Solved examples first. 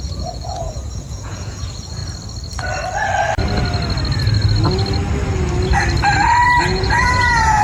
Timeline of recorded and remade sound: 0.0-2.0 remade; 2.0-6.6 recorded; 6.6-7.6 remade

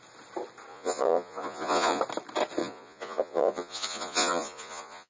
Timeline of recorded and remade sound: 0.0-0.7 recorded; 0.7-2.0 remade; 2.0-2.6 recorded; 2.6-5.1 remade